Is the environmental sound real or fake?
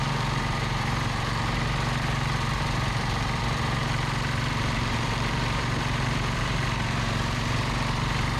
fake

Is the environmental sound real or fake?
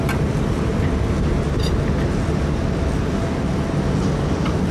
real